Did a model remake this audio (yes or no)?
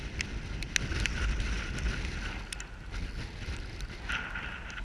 no